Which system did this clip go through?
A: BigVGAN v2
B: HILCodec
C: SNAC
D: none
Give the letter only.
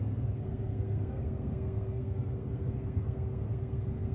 C